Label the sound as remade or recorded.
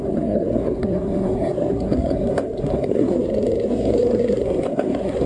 remade